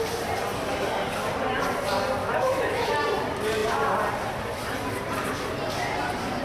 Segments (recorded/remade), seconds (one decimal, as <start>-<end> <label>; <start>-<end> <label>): 0.0-2.2 recorded; 2.2-2.9 remade; 2.9-6.4 recorded